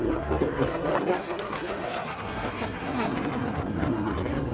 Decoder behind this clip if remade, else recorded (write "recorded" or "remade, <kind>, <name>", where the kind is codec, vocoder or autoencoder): remade, codec, SNAC